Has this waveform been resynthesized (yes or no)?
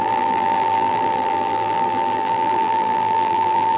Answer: yes